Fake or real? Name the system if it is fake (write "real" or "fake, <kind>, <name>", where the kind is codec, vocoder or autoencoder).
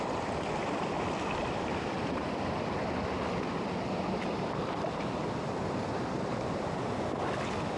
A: real